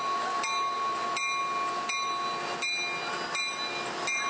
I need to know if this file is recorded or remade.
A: recorded